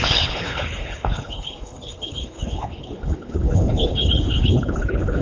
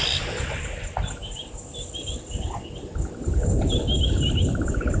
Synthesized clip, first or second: first